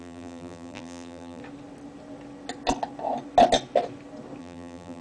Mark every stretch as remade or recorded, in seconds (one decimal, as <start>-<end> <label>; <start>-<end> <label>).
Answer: 0.0-1.4 remade; 1.4-4.4 recorded; 4.4-5.0 remade